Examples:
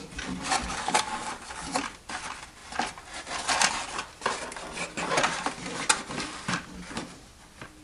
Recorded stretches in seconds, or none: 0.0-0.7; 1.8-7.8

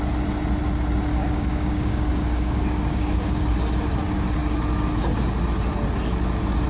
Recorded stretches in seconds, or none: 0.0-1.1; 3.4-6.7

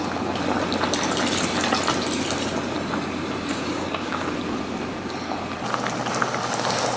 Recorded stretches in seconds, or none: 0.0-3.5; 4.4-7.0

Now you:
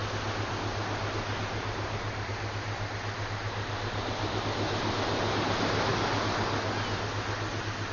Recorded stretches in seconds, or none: 0.0-7.9

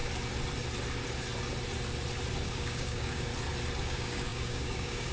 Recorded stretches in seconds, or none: 0.0-2.5; 3.3-3.8